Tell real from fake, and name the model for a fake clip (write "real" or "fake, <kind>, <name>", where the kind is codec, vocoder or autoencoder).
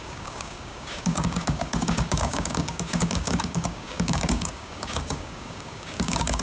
fake, codec, DAC